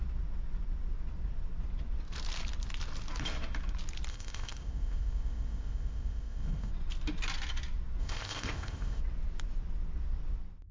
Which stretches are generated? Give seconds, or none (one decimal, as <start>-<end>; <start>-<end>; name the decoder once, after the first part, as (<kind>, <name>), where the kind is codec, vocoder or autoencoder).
4.1-6.7 (codec, ZipCodec); 8.0-9.0